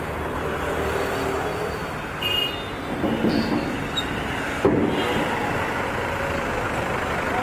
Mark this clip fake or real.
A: real